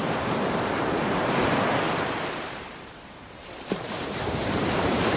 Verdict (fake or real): fake